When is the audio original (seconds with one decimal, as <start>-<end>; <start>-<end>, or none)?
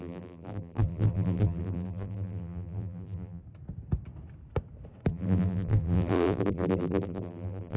3.4-5.1